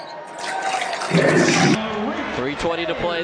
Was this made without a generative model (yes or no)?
yes